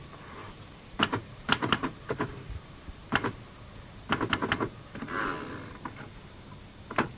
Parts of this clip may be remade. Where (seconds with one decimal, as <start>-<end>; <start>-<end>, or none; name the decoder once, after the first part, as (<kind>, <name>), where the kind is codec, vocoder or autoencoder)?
0.4-4.1 (vocoder, BigVGAN v2)